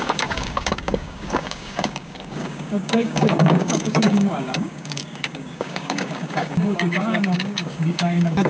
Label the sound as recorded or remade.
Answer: remade